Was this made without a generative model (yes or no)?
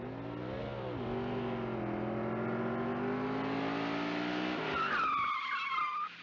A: yes